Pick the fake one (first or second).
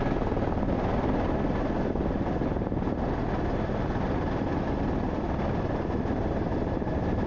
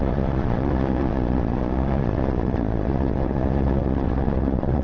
second